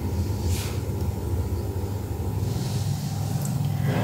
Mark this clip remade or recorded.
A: recorded